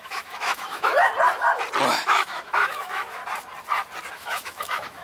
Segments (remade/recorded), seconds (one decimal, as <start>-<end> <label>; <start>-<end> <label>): 0.0-1.1 remade; 1.1-1.9 recorded; 1.9-3.2 remade; 3.2-4.1 recorded; 4.1-5.0 remade

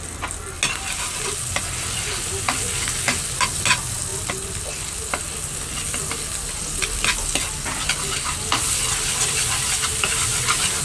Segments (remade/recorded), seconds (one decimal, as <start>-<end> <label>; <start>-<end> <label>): 0.0-10.8 recorded

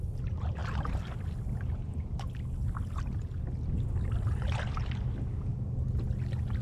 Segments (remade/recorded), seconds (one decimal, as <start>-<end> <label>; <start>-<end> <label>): 0.0-6.6 recorded

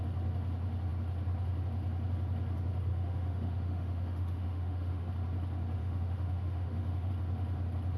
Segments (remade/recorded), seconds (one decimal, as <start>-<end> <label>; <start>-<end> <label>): 0.0-2.9 recorded; 2.9-5.1 remade; 5.1-5.8 recorded; 5.8-7.1 remade; 7.1-8.0 recorded

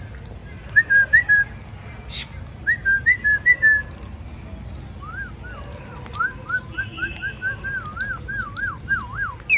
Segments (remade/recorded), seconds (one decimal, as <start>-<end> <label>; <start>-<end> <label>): 0.0-6.9 recorded; 6.9-7.6 remade; 7.6-9.6 recorded

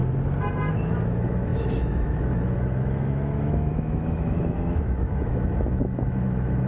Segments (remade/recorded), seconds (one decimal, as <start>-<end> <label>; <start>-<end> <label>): 0.0-0.7 recorded; 0.7-6.7 remade

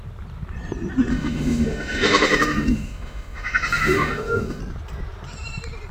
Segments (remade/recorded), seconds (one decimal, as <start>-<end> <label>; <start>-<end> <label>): 0.0-1.1 recorded; 1.1-4.6 remade; 4.6-5.9 recorded